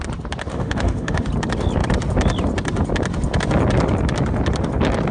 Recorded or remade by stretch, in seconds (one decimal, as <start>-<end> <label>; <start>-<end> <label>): 0.0-0.5 recorded; 0.5-1.3 remade; 1.3-5.1 recorded